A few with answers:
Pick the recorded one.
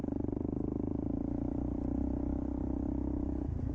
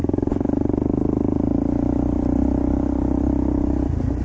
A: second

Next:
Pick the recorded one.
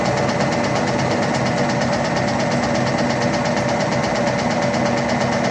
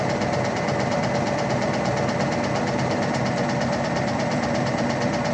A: first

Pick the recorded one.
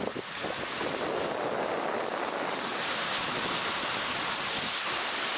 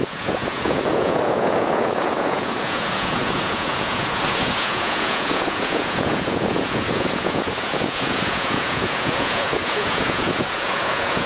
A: first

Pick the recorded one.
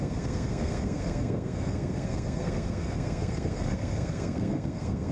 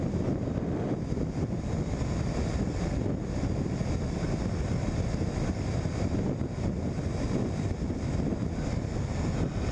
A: second